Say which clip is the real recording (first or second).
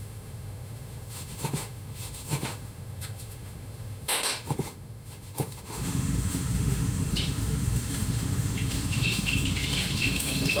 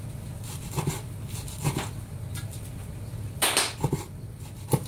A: second